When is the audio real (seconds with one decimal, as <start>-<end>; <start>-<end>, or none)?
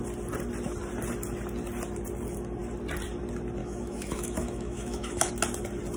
0.0-3.6; 5.3-6.0